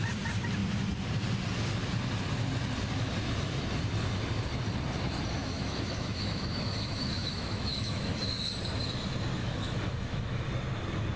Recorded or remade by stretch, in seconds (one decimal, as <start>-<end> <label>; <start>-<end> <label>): 0.0-5.4 recorded; 5.4-8.5 remade; 8.5-9.4 recorded; 9.4-10.5 remade; 10.5-11.2 recorded